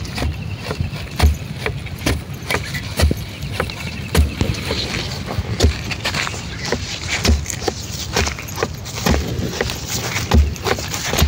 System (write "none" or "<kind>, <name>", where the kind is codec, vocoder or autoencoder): none